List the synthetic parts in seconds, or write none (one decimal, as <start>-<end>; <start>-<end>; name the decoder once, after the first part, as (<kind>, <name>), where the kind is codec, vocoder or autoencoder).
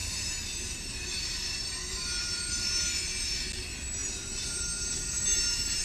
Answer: 0.0-2.8 (vocoder, BigVGAN v2); 4.0-5.8